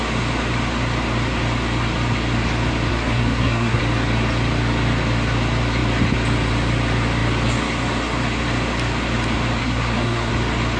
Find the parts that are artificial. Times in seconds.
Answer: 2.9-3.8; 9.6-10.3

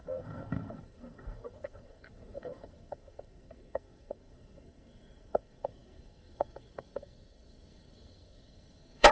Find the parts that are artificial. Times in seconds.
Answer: 0.0-9.1

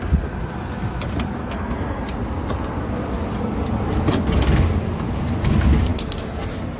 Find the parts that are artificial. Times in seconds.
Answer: 1.4-2.0

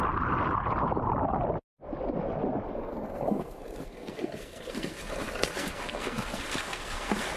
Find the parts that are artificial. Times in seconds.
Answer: 2.7-7.4

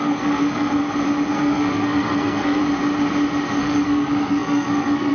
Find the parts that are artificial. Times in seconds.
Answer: 0.0-0.8; 1.3-2.6; 3.6-5.1

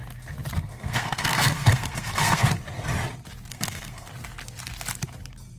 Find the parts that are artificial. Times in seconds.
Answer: 0.7-2.5; 3.5-4.1

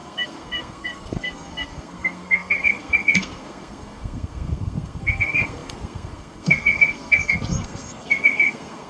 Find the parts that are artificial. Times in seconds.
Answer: 0.0-8.9